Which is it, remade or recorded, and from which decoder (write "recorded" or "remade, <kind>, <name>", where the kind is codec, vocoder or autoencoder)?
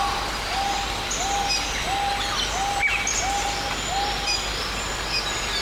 recorded